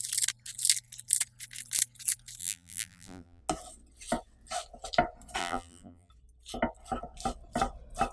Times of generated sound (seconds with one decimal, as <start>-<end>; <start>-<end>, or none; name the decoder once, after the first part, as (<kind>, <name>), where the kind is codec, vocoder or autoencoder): 2.4-3.4 (vocoder, BigVGAN v2); 5.4-6.1